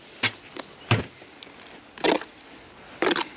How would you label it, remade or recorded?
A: recorded